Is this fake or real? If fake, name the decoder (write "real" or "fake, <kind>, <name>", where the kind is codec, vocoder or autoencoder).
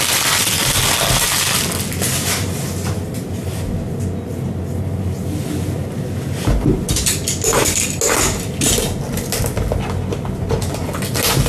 real